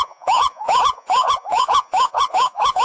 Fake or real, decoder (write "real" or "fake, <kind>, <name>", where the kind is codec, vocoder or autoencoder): fake, vocoder, Vocos